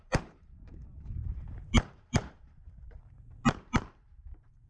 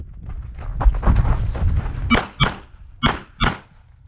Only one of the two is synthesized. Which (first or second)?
first